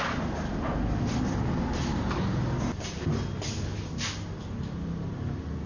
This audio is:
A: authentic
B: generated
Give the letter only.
A